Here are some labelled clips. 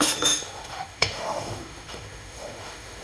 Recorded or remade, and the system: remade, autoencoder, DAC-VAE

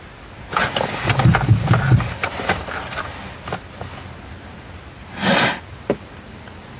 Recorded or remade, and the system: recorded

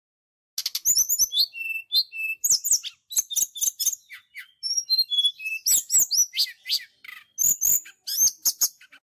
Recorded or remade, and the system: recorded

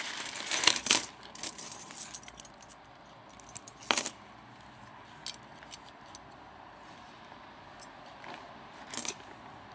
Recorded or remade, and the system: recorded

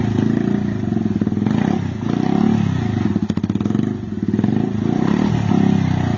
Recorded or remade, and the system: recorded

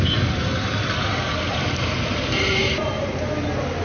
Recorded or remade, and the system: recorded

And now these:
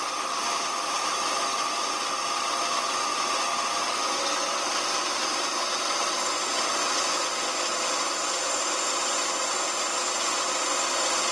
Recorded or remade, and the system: recorded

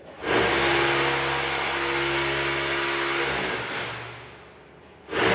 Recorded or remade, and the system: recorded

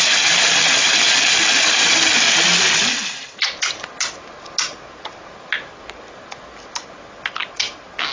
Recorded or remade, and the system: recorded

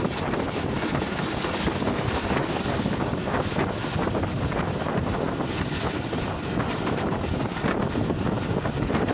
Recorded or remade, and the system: recorded